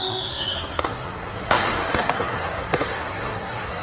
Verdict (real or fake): fake